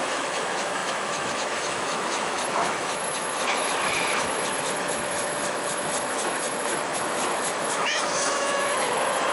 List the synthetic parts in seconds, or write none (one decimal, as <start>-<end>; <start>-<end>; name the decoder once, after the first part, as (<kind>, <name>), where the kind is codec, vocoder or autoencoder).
0.0-9.3 (autoencoder, DAC-VAE)